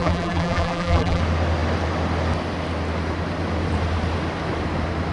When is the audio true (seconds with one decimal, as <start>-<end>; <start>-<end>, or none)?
1.2-5.1